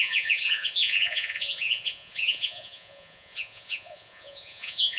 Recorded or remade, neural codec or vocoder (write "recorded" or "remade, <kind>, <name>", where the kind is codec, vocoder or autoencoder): remade, vocoder, Vocos